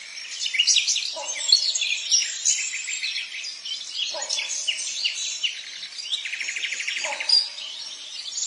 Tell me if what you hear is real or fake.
fake